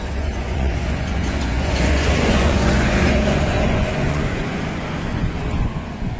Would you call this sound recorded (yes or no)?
no